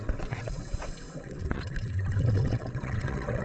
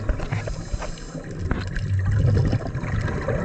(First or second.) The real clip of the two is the second